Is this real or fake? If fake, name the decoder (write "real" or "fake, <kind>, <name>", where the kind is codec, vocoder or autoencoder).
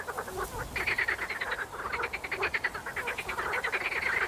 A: real